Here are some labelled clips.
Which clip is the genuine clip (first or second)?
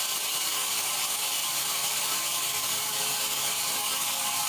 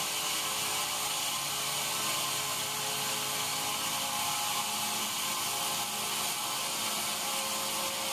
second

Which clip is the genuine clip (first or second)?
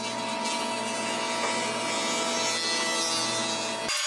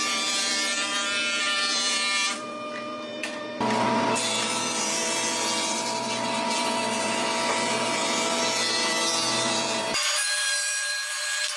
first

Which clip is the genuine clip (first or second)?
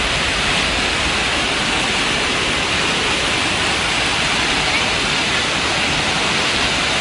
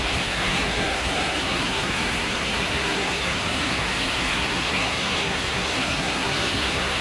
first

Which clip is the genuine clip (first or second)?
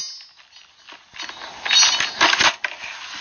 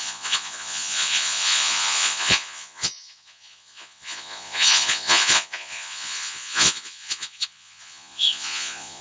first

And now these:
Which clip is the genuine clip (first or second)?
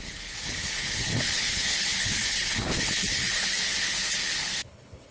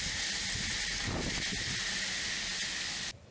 second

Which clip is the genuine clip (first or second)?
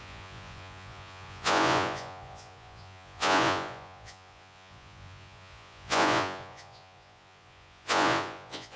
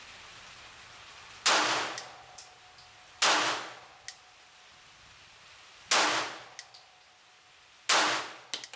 second